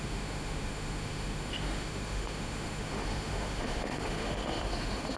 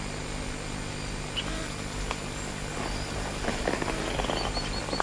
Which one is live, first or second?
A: second